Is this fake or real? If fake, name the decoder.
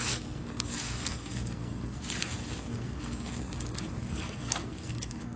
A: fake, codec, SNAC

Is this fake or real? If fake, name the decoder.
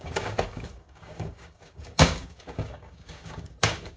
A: fake, codec, DAC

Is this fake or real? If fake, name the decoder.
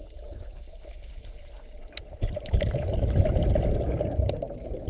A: real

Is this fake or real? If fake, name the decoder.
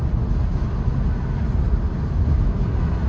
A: real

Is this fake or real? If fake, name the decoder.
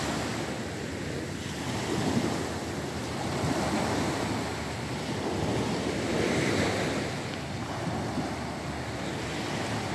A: real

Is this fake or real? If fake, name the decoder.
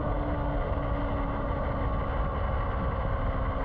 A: real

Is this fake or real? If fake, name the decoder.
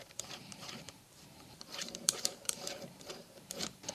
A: fake, vocoder, BigVGAN v2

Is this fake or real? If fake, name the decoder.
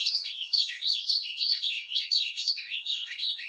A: fake, codec, SNAC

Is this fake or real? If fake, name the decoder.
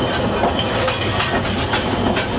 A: real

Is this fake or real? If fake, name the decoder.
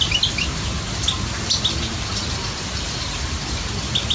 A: real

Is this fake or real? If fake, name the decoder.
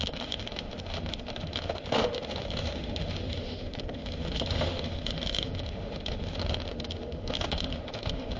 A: fake, autoencoder, DAC-VAE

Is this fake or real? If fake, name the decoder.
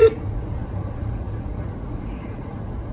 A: fake, vocoder, Vocos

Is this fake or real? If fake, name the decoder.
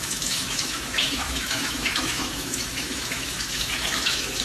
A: fake, autoencoder, DAC-VAE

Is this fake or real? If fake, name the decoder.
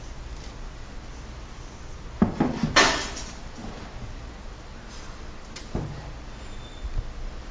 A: real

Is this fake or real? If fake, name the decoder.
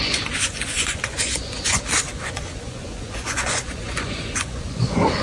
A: fake, vocoder, Vocos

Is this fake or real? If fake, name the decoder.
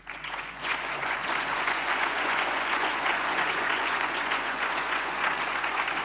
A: fake, vocoder, Vocos